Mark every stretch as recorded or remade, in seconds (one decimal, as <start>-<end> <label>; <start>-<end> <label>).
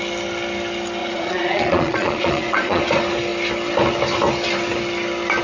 0.0-1.0 recorded; 1.0-2.8 remade; 2.8-5.4 recorded